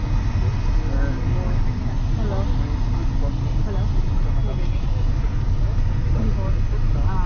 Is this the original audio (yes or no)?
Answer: yes